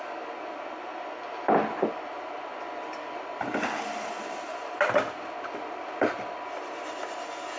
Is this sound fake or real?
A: real